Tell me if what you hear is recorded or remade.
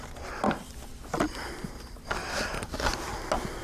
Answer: recorded